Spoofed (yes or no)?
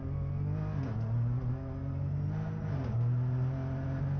no